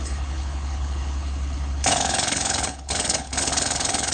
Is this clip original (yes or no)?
no